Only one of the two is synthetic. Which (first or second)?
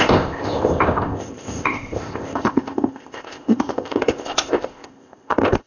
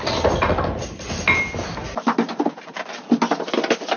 first